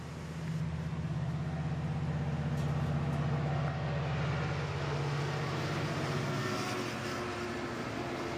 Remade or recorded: recorded